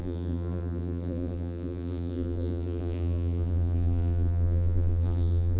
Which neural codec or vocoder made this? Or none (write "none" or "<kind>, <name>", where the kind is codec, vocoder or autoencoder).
vocoder, BigVGAN v2